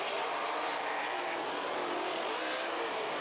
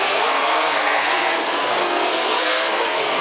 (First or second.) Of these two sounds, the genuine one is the first